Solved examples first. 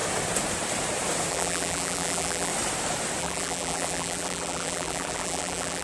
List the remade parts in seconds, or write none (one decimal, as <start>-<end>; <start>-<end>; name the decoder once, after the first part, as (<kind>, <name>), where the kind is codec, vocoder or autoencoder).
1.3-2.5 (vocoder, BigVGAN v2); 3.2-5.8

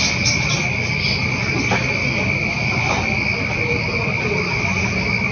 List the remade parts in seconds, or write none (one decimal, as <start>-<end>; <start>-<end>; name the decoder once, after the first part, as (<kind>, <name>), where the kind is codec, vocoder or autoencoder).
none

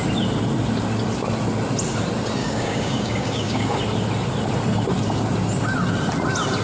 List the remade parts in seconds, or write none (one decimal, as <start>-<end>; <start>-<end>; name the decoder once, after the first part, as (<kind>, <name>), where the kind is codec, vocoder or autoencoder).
2.4-3.8 (codec, DAC)